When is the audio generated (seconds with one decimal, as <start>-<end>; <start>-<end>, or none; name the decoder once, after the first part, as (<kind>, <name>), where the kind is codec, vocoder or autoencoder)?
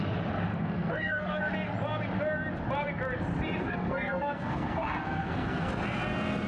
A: 0.5-1.4 (codec, SNAC); 3.6-5.7